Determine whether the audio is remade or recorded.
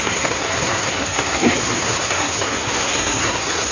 remade